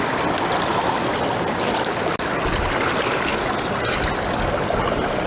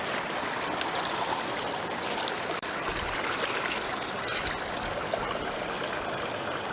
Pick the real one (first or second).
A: first